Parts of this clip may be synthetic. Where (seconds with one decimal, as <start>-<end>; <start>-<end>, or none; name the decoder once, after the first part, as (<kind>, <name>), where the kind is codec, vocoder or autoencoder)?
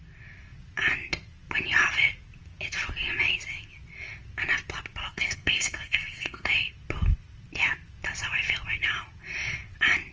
5.0-6.5 (codec, SNAC)